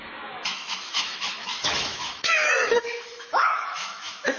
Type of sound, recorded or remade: remade